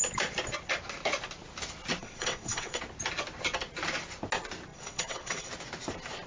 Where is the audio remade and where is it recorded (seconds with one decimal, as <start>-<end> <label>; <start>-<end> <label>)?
0.0-2.0 recorded; 2.0-2.8 remade; 2.8-4.7 recorded; 4.7-5.5 remade; 5.5-6.3 recorded